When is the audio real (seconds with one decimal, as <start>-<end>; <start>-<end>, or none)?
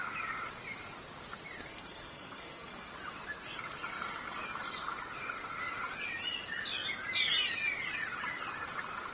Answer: 0.0-1.7; 2.9-9.1